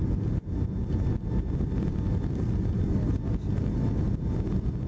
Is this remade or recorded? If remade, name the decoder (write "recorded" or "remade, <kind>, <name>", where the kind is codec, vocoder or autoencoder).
recorded